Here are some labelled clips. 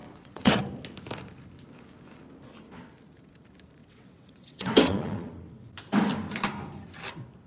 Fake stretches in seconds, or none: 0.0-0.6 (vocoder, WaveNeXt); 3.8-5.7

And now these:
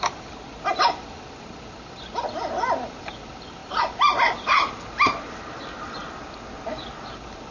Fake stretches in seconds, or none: none

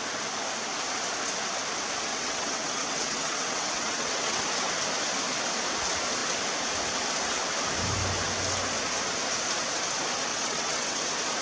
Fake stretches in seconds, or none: 2.1-4.4 (vocoder, WaveNeXt); 10.3-11.0

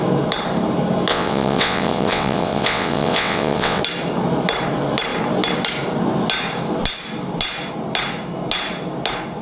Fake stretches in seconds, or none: 1.1-3.8 (vocoder, WaveNeXt)

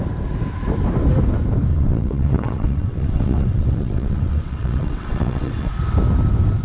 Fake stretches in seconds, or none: 1.7-5.7 (vocoder, WaveNeXt)

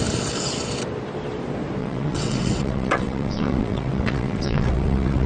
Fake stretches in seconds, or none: 1.8-5.3 (vocoder, WaveNeXt)